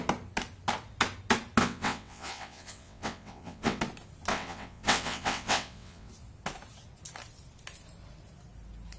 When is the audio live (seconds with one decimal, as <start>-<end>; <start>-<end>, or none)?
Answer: 0.0-1.6; 3.8-4.3; 6.1-9.0